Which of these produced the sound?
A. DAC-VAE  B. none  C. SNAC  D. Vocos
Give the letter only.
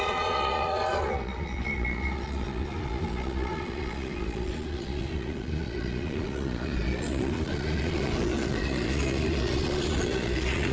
D